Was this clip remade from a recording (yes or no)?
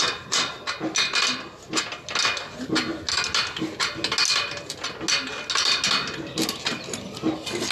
no